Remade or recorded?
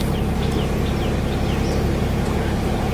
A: recorded